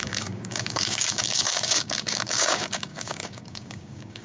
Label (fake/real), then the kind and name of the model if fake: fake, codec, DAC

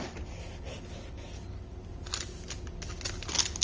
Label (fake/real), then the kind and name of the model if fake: real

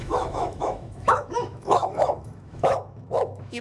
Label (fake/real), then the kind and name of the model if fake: fake, autoencoder, DAC-VAE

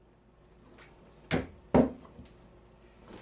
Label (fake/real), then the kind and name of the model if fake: real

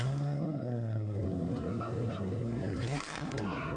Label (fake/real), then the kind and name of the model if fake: fake, codec, SNAC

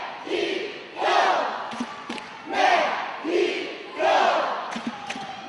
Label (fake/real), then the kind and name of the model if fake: fake, vocoder, Vocos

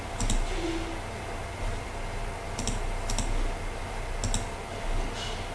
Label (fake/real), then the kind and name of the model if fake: real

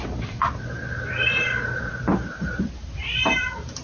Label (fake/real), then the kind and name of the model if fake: fake, vocoder, BigVGAN v2